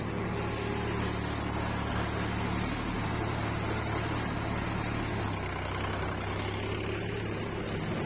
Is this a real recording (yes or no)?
yes